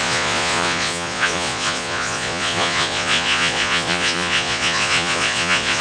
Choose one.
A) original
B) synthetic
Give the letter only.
B